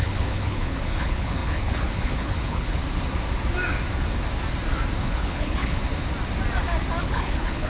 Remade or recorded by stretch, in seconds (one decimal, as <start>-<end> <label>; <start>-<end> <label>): 0.0-2.8 remade; 2.8-5.0 recorded; 5.0-5.8 remade; 5.8-7.0 recorded; 7.0-7.7 remade